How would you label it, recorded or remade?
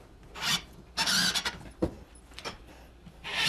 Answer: remade